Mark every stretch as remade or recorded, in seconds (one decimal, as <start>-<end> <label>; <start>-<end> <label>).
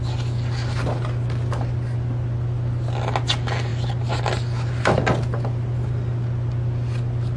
0.0-3.7 recorded; 3.7-5.0 remade; 5.0-7.4 recorded